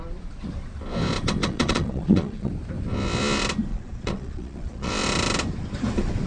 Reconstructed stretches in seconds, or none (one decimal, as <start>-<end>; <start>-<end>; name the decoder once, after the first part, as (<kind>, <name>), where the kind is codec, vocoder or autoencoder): 1.4-2.5 (vocoder, Vocos); 3.7-4.9